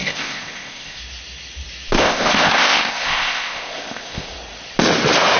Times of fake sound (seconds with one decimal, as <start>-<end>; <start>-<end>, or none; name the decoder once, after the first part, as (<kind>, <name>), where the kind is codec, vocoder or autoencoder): 0.0-1.0 (codec, ZipCodec); 2.0-4.3